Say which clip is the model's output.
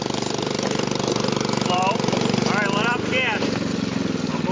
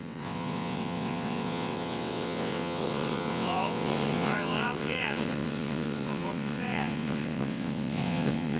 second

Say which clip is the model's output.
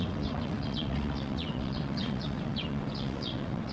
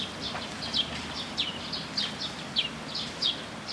first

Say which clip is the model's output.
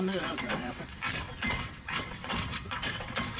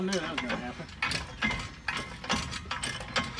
first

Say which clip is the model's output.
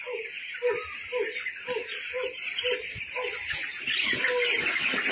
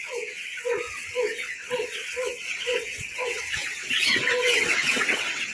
second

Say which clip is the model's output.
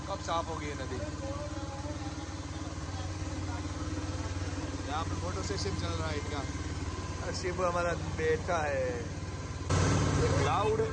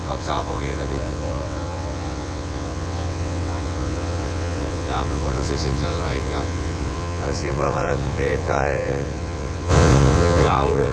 second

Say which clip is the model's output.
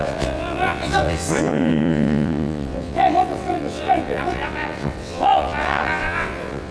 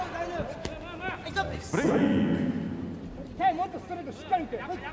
first